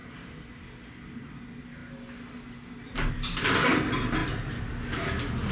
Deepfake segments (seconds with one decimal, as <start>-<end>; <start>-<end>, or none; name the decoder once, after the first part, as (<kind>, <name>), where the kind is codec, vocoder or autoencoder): 0.0-0.6 (vocoder, BigVGAN v2)